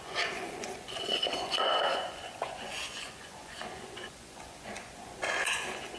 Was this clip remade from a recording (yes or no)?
yes